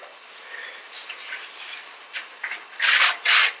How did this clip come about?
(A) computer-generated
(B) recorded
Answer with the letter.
A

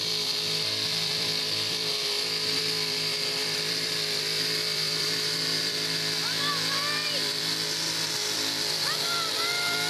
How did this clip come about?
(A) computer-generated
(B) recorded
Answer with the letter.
A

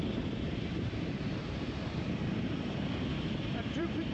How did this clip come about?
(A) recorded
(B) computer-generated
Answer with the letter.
B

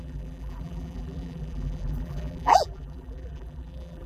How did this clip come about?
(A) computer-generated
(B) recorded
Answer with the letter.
A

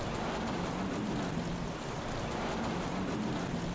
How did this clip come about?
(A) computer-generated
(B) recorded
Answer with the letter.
A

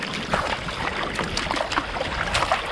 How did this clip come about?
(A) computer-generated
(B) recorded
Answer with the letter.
B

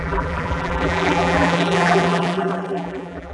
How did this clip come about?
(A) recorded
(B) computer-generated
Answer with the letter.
B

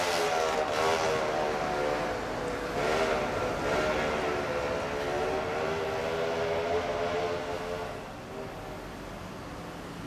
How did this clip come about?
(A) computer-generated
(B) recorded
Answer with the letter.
B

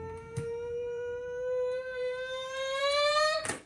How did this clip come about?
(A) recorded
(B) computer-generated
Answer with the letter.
B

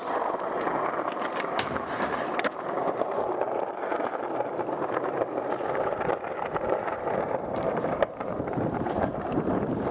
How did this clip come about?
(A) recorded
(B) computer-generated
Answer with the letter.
B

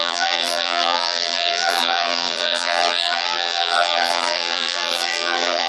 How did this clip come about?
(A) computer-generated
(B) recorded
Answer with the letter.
A